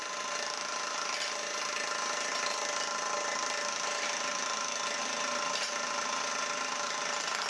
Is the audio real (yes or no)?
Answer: yes